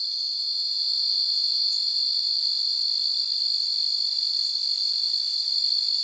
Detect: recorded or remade recorded